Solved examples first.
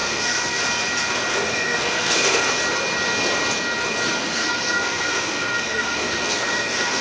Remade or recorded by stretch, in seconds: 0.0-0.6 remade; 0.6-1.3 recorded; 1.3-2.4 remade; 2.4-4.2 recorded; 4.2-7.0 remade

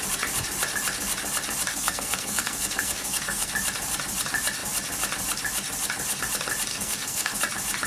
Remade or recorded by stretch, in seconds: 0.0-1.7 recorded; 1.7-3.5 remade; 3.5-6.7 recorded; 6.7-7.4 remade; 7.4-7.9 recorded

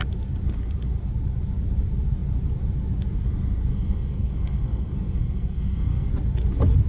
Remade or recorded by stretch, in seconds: 0.0-3.7 recorded; 3.7-6.1 remade; 6.1-6.9 recorded